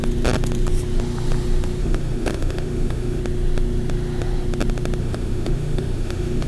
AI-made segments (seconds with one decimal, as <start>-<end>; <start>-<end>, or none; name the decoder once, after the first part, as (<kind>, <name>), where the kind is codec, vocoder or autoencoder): 1.8-3.2 (autoencoder, DAC-VAE); 5.0-6.5